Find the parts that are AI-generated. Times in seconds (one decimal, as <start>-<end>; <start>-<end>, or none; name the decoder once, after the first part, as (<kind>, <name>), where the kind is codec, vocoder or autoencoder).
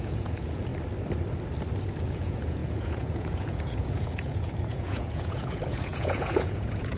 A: 0.0-0.7 (vocoder, Vocos); 2.0-7.0